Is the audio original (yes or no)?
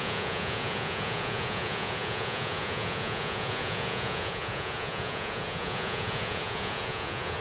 no